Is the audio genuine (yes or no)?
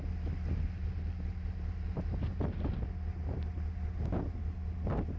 yes